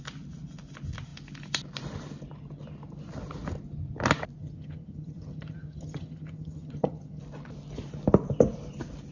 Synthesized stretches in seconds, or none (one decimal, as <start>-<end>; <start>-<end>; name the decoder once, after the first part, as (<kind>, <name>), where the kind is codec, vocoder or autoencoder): 4.4-7.2 (vocoder, HiFi-GAN)